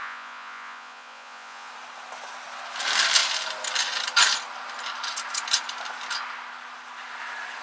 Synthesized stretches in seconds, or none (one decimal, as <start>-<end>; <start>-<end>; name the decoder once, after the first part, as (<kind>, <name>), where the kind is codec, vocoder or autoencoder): 0.0-1.7 (vocoder, Vocos)